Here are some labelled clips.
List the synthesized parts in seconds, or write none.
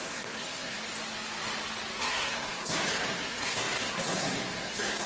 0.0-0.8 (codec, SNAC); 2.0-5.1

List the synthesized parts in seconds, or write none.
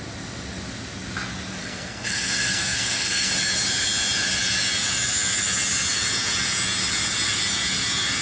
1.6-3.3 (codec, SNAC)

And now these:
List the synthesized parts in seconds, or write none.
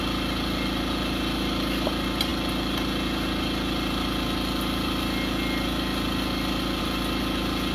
none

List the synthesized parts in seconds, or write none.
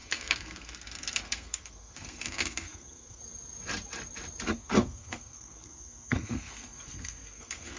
0.0-3.2 (codec, SNAC); 4.5-7.8